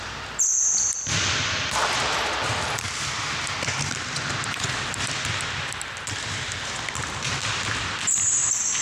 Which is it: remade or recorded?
recorded